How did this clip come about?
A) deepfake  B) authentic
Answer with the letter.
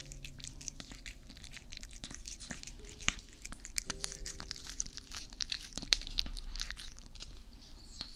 A